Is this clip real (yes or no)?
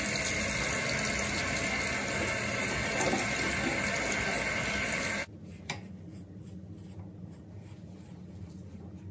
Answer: yes